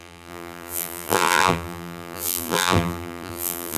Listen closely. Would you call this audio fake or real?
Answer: fake